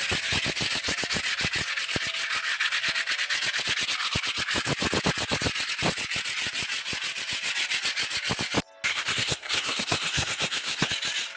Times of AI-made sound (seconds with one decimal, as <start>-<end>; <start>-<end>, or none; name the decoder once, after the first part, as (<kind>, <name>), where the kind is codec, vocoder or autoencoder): 8.9-10.9 (codec, SNAC)